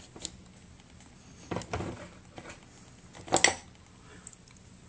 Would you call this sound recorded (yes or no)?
yes